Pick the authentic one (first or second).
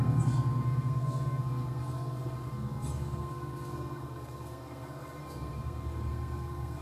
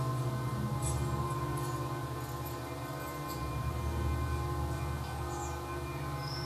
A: second